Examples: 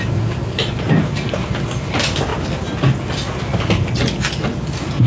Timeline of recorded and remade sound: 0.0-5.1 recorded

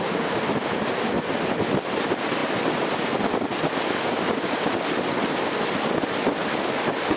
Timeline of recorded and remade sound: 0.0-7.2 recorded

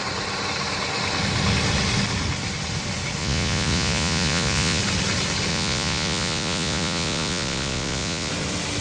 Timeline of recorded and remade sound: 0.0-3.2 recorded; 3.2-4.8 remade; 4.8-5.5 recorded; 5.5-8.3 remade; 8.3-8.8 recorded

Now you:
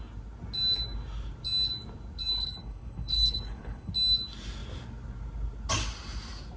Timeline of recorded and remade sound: 0.0-2.3 recorded; 2.3-3.9 remade; 3.9-6.6 recorded

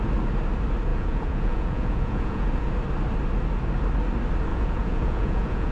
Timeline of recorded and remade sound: 0.0-0.9 recorded; 0.9-2.7 remade; 2.7-4.5 recorded; 4.5-5.7 remade

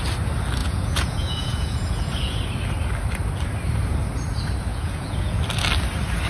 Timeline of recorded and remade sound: 0.0-0.6 recorded; 0.6-2.4 remade; 2.4-4.7 recorded; 4.7-5.4 remade; 5.4-6.3 recorded

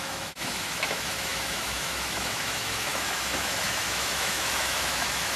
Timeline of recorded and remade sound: 0.0-5.4 remade

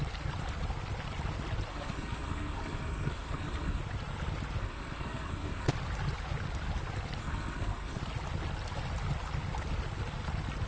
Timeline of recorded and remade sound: 0.0-1.7 recorded; 1.7-3.8 remade; 3.8-4.6 recorded; 4.6-5.7 remade; 5.7-7.2 recorded; 7.2-8.0 remade; 8.0-10.7 recorded